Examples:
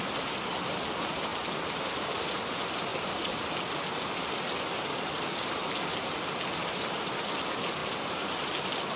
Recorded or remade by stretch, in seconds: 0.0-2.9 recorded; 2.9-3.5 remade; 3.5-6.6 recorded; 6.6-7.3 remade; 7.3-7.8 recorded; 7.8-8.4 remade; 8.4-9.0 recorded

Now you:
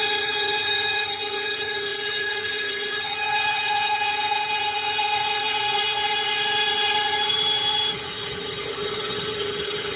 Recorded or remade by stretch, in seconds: 0.0-10.0 remade